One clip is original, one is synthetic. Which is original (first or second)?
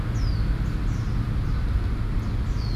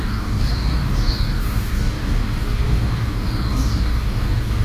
first